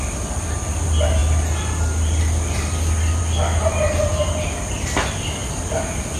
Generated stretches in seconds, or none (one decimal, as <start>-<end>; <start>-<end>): none